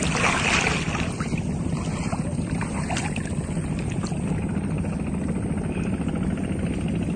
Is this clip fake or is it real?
real